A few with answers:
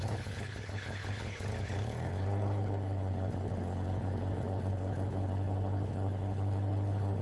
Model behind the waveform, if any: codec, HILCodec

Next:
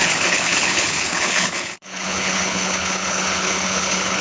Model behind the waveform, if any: codec, HILCodec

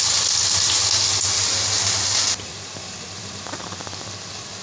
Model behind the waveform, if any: none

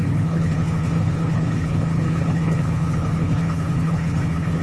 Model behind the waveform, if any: codec, HILCodec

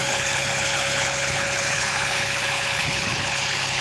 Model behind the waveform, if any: codec, HILCodec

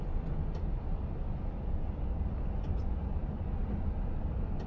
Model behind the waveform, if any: none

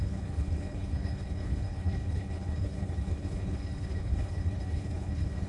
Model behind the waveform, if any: codec, HILCodec